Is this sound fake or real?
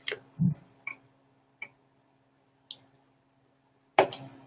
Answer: real